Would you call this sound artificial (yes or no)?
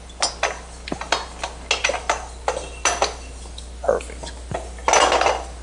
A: no